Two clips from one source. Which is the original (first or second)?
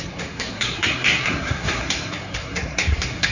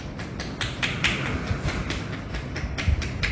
second